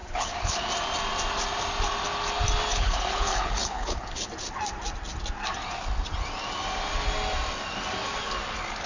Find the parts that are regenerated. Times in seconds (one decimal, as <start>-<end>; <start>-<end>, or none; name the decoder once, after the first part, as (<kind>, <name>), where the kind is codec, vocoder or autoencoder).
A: 0.0-0.6 (codec, HILCodec); 2.7-4.3